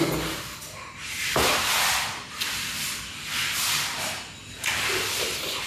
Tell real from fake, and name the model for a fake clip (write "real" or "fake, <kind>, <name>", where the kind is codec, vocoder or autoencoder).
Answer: real